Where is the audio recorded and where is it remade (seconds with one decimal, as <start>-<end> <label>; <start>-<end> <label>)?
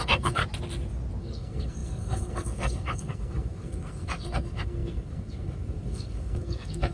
0.0-0.4 remade; 0.4-1.2 recorded; 1.2-6.9 remade